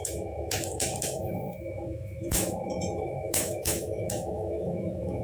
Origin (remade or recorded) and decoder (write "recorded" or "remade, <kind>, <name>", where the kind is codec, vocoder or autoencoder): remade, autoencoder, DAC-VAE